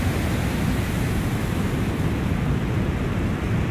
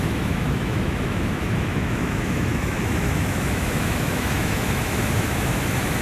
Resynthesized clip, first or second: second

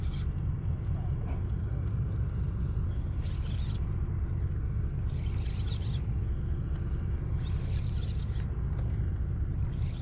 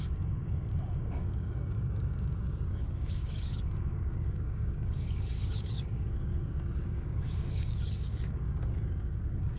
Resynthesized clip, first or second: second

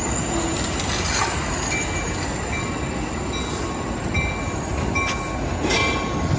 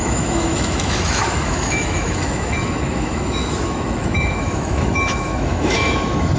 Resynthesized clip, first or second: second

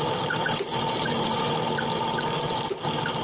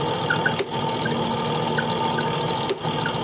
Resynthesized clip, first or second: first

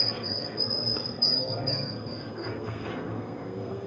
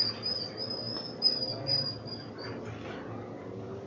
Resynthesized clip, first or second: first